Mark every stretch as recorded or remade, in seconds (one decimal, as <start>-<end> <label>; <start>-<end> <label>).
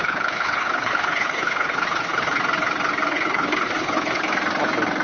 0.0-2.4 remade; 2.4-3.1 recorded; 3.1-4.2 remade; 4.2-5.0 recorded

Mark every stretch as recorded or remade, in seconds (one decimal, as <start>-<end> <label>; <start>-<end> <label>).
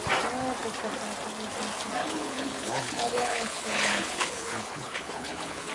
0.0-2.0 recorded; 2.0-5.7 remade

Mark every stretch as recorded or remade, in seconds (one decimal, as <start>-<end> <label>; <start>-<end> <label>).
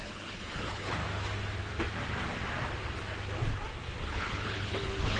0.0-1.0 remade; 1.0-4.1 recorded; 4.1-5.2 remade